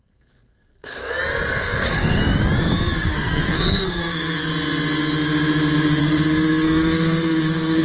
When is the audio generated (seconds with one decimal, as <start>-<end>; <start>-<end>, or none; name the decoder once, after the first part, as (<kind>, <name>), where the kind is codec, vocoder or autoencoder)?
0.0-0.9 (codec, SNAC); 1.6-2.2; 3.0-4.5; 6.0-7.8